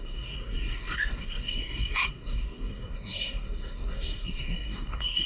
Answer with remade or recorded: remade